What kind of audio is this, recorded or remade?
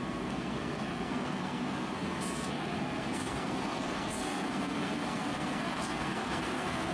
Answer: remade